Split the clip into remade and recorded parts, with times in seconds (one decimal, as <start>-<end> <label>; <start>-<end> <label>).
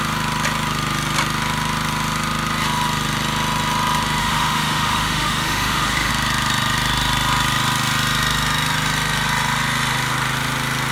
0.0-4.2 recorded; 4.2-6.1 remade; 6.1-10.9 recorded